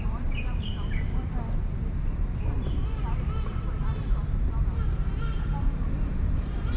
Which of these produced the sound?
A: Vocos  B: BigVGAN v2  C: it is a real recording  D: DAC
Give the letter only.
B